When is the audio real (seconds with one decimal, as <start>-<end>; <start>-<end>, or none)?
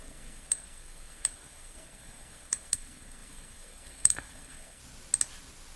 4.8-5.8